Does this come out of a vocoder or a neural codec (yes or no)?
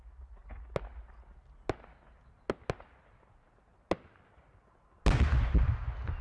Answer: no